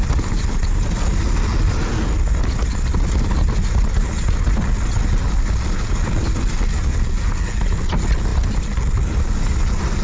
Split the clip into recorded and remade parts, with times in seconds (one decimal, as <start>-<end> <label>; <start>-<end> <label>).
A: 0.0-10.0 recorded